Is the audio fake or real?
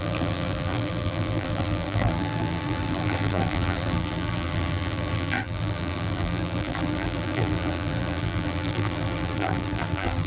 fake